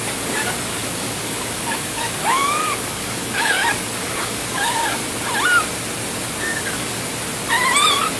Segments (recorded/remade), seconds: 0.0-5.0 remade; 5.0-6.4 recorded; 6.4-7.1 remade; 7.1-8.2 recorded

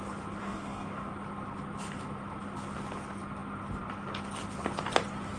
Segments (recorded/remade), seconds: 0.0-0.4 recorded; 0.4-1.1 remade; 1.1-5.4 recorded

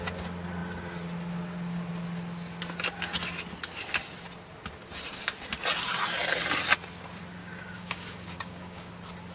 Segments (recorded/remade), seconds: 0.0-7.4 recorded; 7.4-8.9 remade; 8.9-9.3 recorded